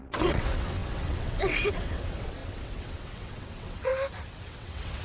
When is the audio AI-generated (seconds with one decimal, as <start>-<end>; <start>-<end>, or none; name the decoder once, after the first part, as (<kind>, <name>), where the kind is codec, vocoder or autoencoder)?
0.0-3.9 (vocoder, WaveNeXt); 4.4-5.0

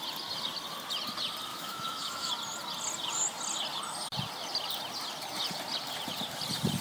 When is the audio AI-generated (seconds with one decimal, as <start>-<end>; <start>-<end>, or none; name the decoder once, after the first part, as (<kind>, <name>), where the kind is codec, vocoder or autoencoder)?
1.5-2.3 (autoencoder, DAC-VAE)